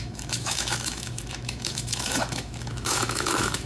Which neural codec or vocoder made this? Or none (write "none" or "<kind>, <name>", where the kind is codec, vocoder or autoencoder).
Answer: autoencoder, DAC-VAE